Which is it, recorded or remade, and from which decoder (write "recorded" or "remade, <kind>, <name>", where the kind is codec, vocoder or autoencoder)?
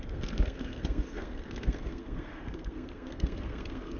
remade, codec, SNAC